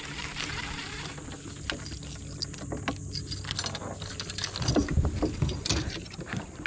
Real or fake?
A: real